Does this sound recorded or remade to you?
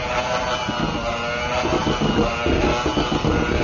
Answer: recorded